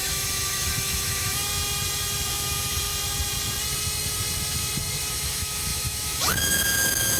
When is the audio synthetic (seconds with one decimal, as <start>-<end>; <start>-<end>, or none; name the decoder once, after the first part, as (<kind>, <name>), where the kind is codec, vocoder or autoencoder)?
0.0-1.4 (autoencoder, DAC-VAE); 2.3-2.9; 5.1-7.2